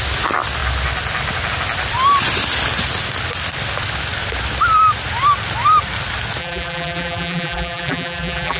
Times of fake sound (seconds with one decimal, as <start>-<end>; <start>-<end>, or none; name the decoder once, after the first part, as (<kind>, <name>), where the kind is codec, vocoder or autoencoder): 6.4-8.6 (vocoder, BigVGAN v2)